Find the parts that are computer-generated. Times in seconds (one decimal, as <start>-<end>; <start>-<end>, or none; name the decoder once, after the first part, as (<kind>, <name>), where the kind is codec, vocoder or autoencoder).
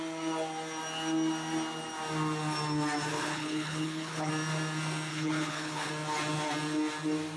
3.1-4.3 (codec, HILCodec); 5.1-5.9